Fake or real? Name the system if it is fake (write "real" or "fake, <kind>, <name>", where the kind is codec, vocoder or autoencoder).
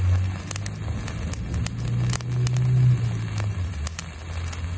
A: real